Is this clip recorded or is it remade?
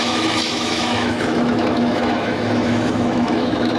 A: remade